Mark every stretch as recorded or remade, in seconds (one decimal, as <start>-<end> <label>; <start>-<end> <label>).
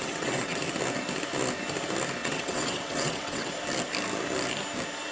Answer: 0.0-0.6 remade; 0.6-2.2 recorded; 2.2-3.5 remade; 3.5-5.1 recorded